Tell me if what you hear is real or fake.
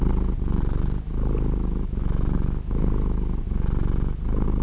real